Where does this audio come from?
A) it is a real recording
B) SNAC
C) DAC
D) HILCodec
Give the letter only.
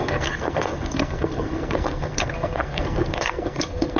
B